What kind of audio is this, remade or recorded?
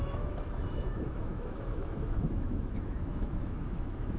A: remade